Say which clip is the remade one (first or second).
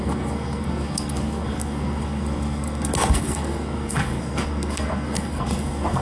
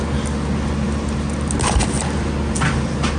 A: first